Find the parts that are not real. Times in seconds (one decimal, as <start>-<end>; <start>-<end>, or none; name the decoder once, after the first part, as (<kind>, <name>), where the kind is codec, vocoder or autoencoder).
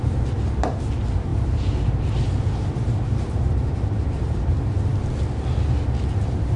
1.3-4.6 (vocoder, BigVGAN v2)